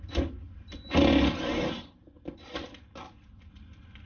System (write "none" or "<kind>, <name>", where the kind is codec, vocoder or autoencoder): none